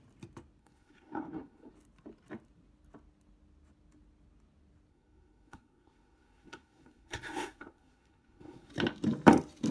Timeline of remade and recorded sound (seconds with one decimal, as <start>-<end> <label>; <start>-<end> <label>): 0.0-0.6 recorded; 0.6-1.7 remade; 1.7-4.9 recorded; 4.9-8.7 remade; 8.7-9.7 recorded